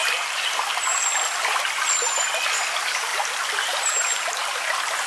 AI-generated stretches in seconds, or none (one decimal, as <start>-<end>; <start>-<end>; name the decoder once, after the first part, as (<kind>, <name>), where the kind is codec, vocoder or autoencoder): none